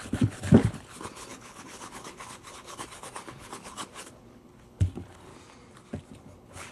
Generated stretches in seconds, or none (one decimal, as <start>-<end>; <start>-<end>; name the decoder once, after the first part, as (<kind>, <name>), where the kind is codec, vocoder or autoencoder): 0.0-5.3 (codec, HILCodec); 6.1-6.7